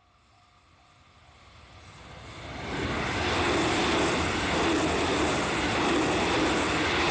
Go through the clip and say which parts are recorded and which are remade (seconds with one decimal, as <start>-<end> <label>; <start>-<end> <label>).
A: 0.0-7.1 recorded

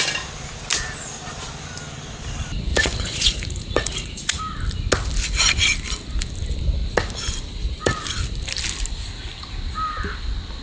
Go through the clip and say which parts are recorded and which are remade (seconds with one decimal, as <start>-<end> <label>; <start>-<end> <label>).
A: 0.0-2.7 recorded; 2.7-4.4 remade; 4.4-10.6 recorded

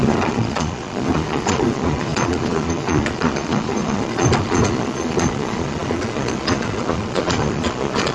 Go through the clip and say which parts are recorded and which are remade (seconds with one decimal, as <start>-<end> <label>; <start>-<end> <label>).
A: 0.0-8.1 remade